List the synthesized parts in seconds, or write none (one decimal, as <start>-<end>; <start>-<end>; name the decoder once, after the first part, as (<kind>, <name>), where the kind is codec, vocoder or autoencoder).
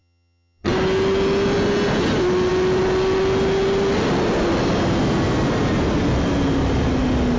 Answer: 0.0-0.7 (vocoder, HiFi-GAN)